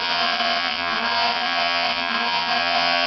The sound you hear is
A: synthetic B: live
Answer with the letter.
A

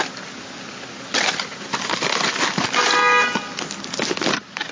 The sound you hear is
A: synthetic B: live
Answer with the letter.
B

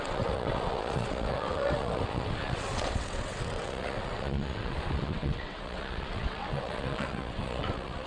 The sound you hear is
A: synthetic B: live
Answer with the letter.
A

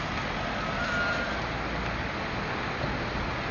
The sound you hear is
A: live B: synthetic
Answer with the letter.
A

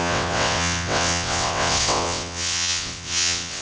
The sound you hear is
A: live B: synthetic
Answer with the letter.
B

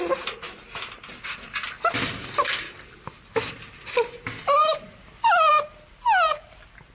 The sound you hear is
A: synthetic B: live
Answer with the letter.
B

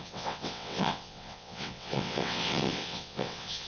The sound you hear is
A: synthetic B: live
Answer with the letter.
A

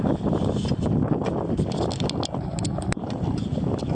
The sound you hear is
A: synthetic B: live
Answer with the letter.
B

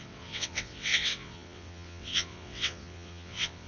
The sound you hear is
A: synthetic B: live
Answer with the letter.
A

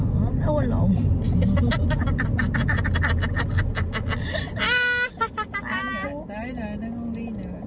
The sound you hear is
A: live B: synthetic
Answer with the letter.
A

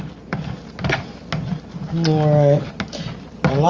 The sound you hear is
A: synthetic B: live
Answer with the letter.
B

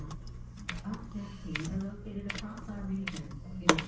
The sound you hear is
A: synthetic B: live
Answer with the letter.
B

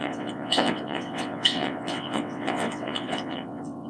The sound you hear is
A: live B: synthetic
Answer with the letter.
B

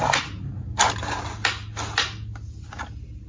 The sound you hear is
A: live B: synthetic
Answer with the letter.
A